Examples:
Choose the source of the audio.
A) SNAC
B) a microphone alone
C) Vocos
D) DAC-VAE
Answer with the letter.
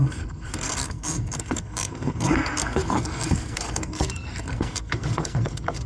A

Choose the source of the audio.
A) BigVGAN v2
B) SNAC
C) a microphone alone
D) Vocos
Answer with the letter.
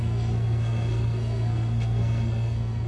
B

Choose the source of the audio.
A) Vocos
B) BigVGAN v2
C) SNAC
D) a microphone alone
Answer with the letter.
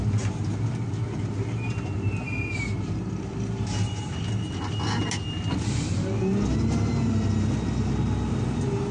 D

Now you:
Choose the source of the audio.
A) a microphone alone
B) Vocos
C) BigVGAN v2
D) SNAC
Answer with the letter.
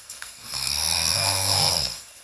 D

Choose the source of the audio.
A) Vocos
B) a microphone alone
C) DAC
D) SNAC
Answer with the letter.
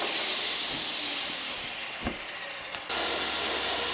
B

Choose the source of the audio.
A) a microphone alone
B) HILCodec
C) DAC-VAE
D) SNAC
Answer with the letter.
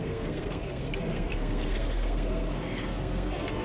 D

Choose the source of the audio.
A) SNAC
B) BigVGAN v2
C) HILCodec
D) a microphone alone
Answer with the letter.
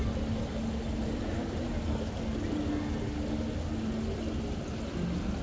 D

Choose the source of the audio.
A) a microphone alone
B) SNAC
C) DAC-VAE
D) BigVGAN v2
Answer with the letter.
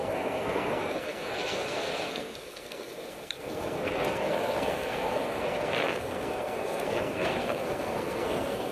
B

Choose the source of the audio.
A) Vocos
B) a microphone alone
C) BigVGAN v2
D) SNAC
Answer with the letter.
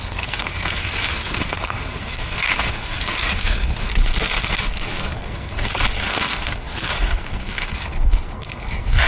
D